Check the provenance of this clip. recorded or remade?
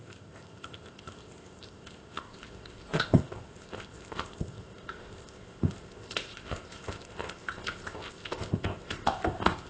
remade